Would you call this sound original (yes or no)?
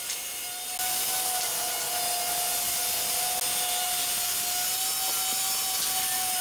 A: yes